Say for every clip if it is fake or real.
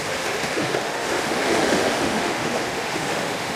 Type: fake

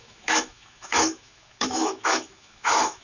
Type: fake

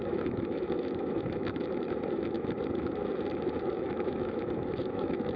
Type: fake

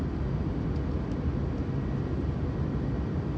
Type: real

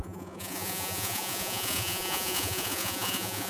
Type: fake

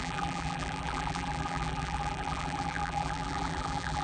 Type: fake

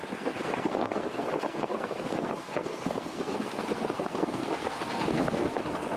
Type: fake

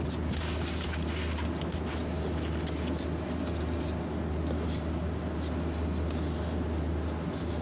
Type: real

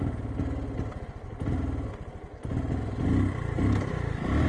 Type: real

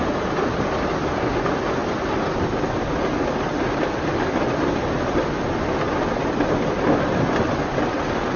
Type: real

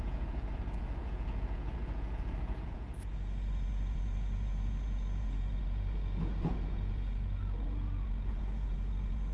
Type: fake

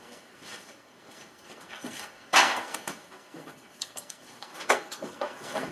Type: fake